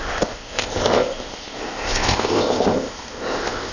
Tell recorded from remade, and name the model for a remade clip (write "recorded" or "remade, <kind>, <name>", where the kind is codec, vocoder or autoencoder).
remade, codec, ZipCodec